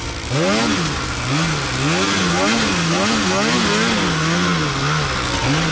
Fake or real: real